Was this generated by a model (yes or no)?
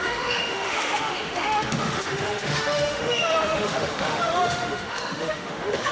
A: yes